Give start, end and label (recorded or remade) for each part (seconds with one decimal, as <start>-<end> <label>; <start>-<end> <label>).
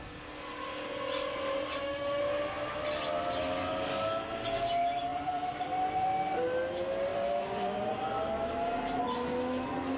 0.0-5.1 recorded; 5.1-5.7 remade; 5.7-7.1 recorded; 7.1-8.0 remade; 8.0-10.0 recorded